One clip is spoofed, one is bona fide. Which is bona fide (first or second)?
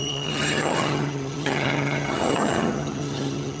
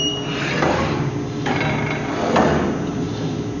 second